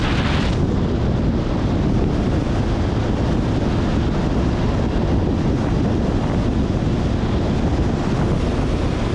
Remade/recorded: recorded